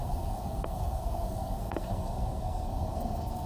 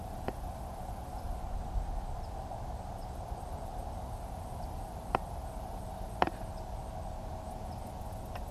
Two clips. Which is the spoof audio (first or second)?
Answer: first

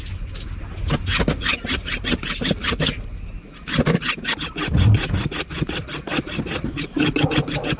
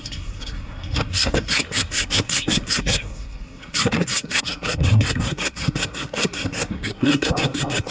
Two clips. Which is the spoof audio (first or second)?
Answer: second